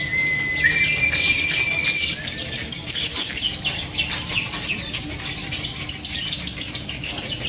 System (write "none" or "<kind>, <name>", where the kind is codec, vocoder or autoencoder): none